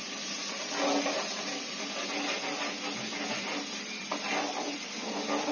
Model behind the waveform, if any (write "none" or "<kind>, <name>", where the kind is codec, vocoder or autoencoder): none